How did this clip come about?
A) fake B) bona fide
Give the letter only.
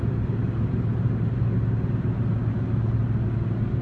B